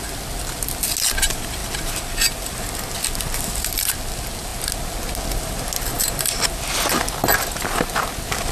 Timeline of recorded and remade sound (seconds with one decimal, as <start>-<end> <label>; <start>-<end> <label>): 0.0-8.5 recorded

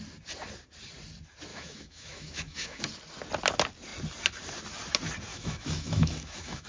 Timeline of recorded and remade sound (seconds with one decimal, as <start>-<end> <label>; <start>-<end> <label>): 0.0-1.5 recorded; 1.5-2.8 remade; 2.8-5.3 recorded; 5.3-6.7 remade